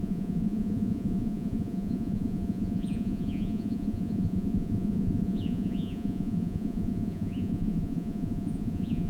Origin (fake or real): fake